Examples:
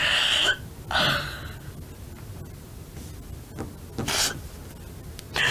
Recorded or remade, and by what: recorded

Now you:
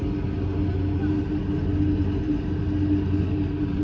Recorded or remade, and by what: recorded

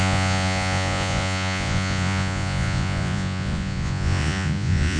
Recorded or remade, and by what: remade, vocoder, Vocos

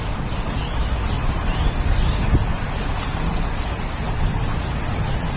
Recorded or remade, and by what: recorded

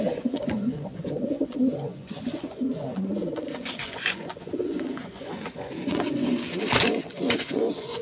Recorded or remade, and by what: remade, vocoder, Vocos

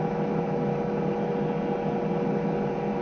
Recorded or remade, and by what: recorded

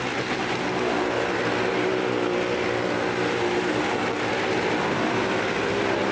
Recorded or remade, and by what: recorded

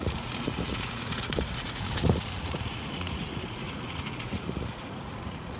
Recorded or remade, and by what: remade, vocoder, Vocos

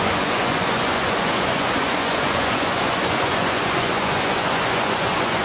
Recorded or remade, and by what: remade, vocoder, Vocos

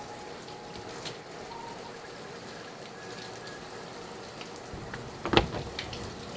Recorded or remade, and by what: recorded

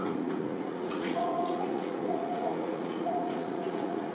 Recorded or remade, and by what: remade, vocoder, Vocos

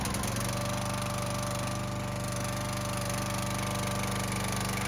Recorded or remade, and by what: recorded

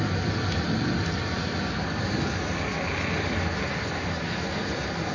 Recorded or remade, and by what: recorded